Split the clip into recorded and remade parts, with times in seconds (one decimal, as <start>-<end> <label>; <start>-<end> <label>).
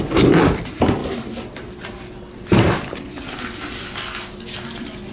0.0-5.1 recorded